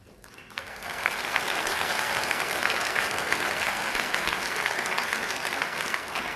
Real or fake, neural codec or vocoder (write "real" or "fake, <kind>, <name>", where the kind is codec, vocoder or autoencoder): fake, codec, SNAC